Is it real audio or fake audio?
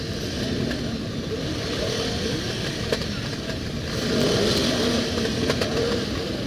real